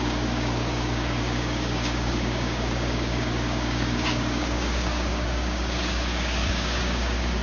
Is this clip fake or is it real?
fake